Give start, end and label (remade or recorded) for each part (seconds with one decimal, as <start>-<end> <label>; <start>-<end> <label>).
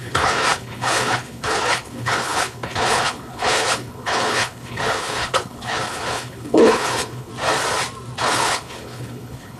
0.0-7.3 remade; 7.3-8.2 recorded; 8.2-9.6 remade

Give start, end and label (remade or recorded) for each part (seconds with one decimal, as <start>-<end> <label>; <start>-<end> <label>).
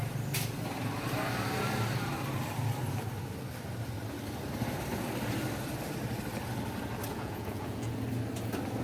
0.0-7.1 recorded; 7.1-8.0 remade; 8.0-8.8 recorded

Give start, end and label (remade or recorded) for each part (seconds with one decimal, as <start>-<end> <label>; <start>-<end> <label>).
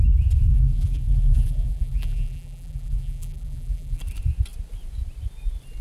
0.0-0.5 recorded; 0.5-4.0 remade; 4.0-5.8 recorded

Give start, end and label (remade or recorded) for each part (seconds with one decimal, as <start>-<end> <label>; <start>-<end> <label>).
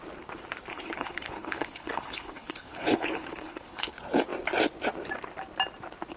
0.0-0.7 recorded; 0.7-3.9 remade; 3.9-6.2 recorded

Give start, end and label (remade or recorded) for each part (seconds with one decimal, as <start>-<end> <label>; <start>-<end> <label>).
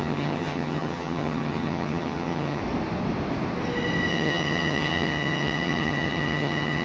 0.0-2.6 remade; 2.6-4.1 recorded; 4.1-6.8 remade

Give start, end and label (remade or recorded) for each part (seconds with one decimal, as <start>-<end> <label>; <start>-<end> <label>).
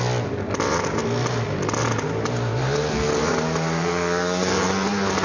0.0-5.2 recorded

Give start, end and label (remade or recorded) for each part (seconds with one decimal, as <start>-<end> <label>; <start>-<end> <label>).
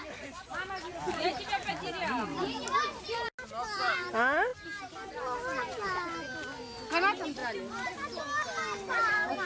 0.0-9.5 recorded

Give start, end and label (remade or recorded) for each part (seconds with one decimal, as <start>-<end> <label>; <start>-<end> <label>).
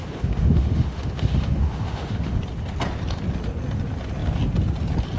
0.0-2.4 remade; 2.4-5.2 recorded